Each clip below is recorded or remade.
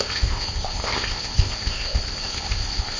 remade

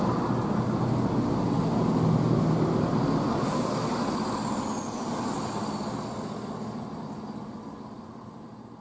recorded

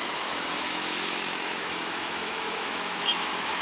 remade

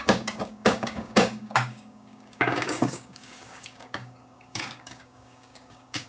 remade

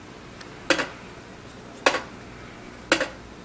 recorded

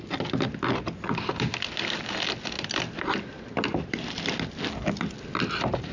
recorded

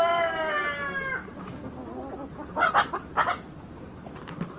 recorded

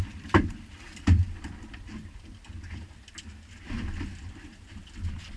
recorded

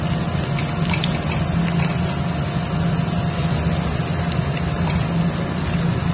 recorded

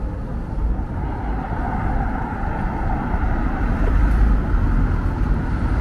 recorded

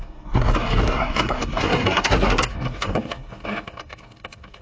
remade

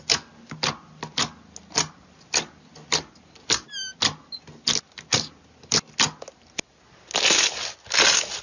recorded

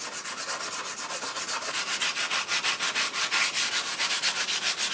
recorded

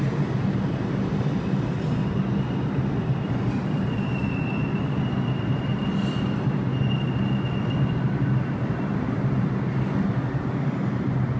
recorded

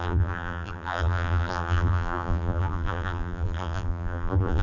remade